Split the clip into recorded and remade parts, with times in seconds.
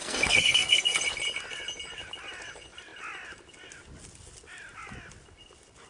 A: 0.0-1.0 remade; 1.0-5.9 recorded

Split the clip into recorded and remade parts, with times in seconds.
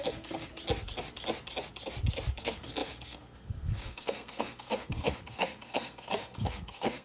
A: 0.0-0.5 remade; 0.5-2.4 recorded; 2.4-7.0 remade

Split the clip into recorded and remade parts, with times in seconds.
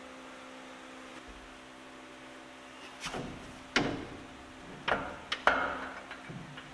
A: 0.0-6.7 recorded